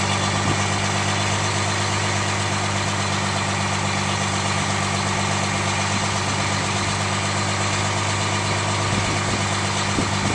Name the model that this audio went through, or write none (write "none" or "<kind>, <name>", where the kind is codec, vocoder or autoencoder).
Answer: none